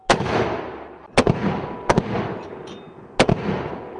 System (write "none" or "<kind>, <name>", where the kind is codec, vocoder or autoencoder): none